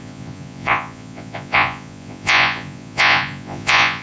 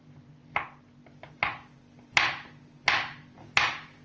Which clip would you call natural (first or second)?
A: second